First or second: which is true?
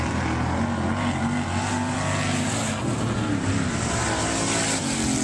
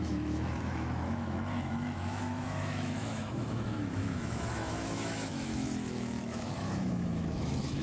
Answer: first